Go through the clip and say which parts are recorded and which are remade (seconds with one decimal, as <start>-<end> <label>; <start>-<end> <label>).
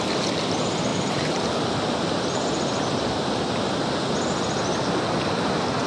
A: 0.0-0.9 recorded; 0.9-4.3 remade; 4.3-5.9 recorded